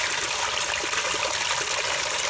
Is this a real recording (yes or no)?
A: yes